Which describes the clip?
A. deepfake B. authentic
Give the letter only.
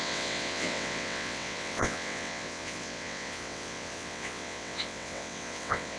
A